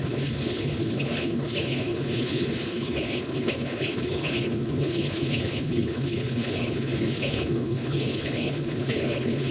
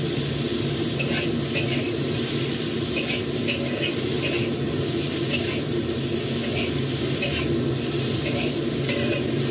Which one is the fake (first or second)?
first